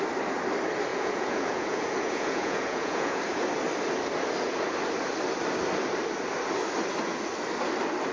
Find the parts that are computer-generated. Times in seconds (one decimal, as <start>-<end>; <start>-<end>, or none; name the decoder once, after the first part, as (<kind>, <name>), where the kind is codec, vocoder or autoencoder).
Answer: 0.9-3.2 (vocoder, Vocos)